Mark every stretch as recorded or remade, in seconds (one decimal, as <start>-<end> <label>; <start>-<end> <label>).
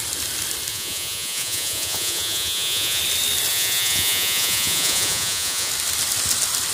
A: 0.0-0.7 recorded; 0.7-3.0 remade; 3.0-3.5 recorded; 3.5-5.7 remade; 5.7-6.7 recorded